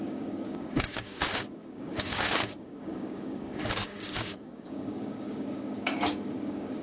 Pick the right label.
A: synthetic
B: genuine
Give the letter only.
A